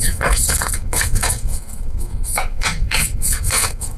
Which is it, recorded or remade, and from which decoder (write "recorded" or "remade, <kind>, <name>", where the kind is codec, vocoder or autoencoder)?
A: remade, codec, SNAC